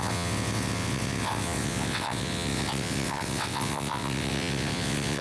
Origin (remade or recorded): remade